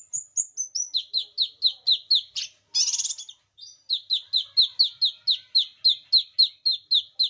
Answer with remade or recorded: recorded